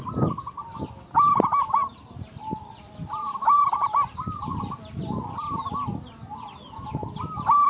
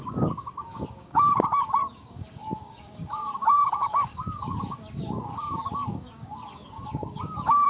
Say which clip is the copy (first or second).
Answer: second